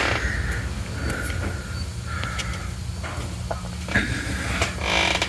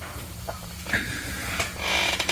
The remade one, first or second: second